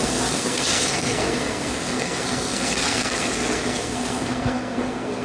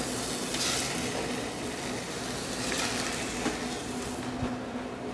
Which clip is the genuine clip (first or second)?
second